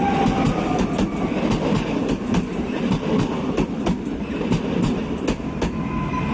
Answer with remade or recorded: recorded